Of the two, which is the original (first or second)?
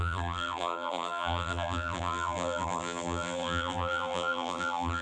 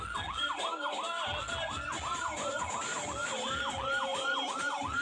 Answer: second